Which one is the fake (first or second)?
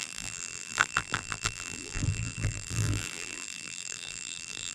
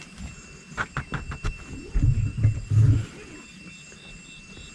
first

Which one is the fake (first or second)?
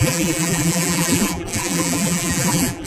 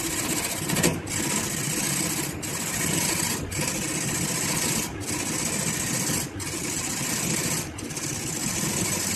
first